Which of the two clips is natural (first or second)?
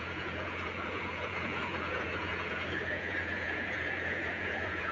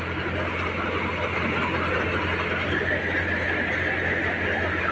second